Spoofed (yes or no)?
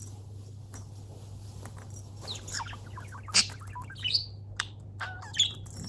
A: no